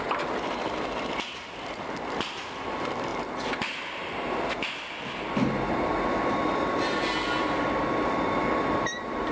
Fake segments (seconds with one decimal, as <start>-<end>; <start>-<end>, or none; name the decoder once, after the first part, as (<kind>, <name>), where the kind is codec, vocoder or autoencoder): none